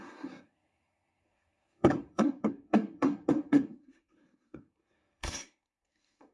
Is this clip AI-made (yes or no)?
yes